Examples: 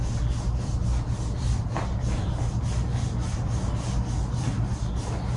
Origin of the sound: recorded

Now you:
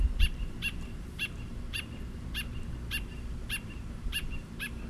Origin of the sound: remade